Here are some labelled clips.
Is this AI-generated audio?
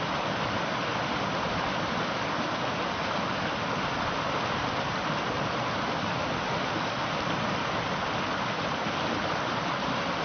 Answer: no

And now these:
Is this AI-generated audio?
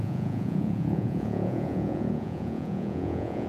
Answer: yes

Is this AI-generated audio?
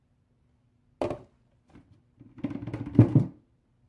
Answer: no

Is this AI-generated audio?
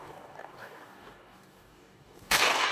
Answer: yes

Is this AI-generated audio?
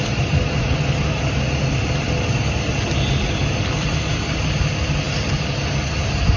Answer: no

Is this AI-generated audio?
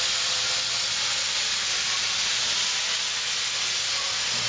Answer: no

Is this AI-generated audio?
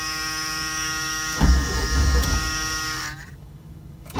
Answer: yes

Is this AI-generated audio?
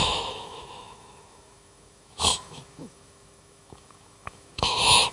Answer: yes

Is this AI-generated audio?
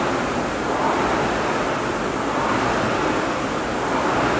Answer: no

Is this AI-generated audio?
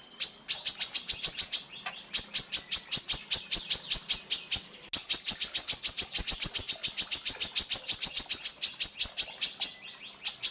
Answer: no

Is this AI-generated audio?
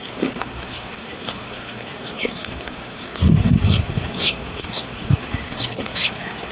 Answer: yes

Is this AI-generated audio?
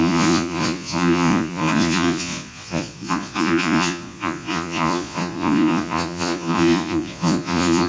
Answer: yes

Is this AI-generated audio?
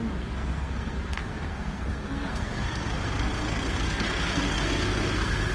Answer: yes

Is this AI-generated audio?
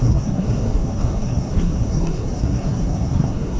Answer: yes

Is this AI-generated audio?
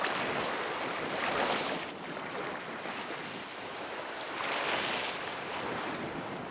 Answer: no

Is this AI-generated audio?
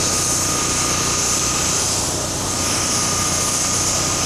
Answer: no